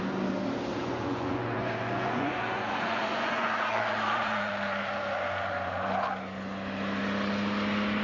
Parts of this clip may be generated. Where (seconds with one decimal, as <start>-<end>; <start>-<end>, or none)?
0.8-4.5